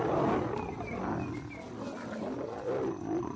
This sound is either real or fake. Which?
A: real